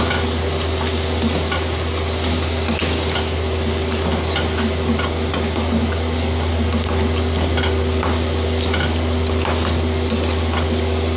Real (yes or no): yes